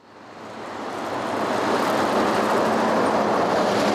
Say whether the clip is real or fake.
real